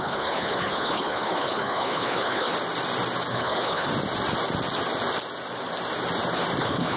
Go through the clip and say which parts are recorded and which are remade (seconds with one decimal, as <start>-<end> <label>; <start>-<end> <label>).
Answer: 0.0-2.5 remade; 2.5-3.3 recorded; 3.3-3.9 remade; 3.9-6.6 recorded; 6.6-7.0 remade